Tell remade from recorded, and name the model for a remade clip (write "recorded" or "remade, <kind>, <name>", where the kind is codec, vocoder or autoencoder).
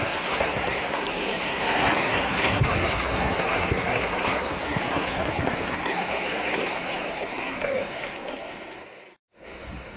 remade, codec, SNAC